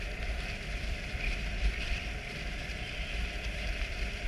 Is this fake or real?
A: real